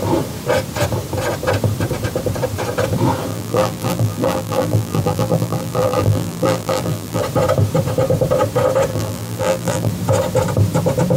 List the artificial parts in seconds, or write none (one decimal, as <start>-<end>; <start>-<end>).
3.3-7.2; 8.9-9.9